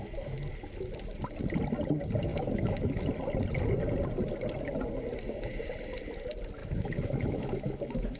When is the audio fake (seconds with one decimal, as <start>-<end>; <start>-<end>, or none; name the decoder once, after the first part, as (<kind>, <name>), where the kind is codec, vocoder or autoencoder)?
2.3-3.1 (autoencoder, DAC-VAE); 6.6-8.2